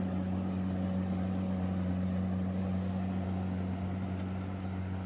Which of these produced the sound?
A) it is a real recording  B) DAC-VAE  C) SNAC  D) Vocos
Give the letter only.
A